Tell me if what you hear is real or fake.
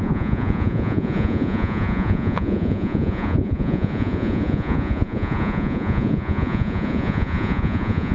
fake